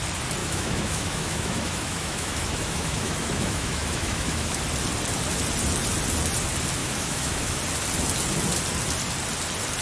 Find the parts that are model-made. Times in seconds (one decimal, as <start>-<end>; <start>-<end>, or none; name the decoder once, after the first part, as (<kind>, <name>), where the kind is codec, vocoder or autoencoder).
0.4-4.6 (autoencoder, DAC-VAE); 6.8-7.6